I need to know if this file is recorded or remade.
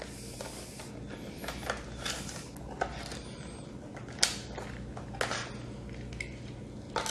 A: recorded